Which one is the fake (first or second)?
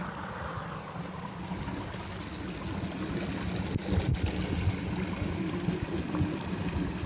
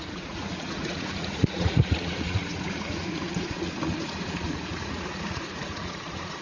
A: second